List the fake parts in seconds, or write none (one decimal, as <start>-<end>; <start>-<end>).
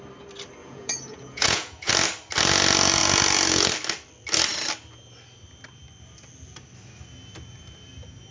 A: 0.6-1.9